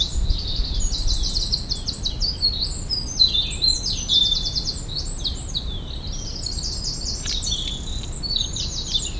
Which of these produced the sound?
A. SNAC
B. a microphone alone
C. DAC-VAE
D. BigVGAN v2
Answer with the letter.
B